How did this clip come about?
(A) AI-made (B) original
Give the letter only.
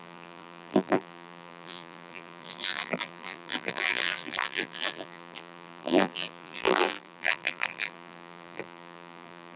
A